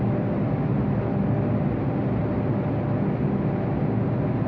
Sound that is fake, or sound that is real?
real